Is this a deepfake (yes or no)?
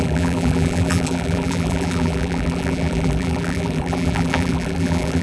yes